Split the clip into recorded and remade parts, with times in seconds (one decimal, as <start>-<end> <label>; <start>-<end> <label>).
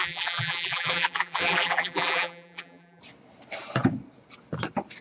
0.0-3.0 remade; 3.0-5.0 recorded